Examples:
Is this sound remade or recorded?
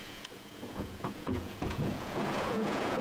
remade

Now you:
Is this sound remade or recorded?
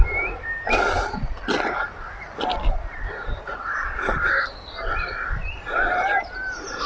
recorded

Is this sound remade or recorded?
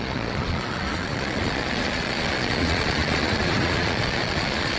remade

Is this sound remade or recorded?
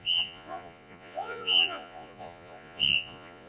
remade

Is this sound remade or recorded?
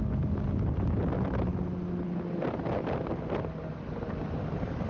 recorded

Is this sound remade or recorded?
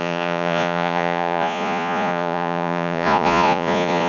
remade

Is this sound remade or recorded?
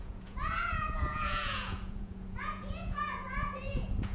remade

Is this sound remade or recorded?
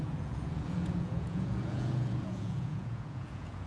remade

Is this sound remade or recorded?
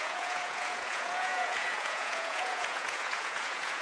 remade